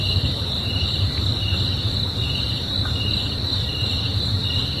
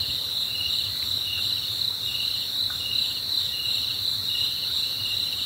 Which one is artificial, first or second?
first